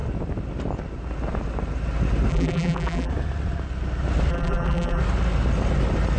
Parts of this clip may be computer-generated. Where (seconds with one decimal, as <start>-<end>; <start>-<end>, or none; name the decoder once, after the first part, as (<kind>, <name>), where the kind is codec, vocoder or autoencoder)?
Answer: 2.3-3.1 (vocoder, BigVGAN v2); 4.3-5.0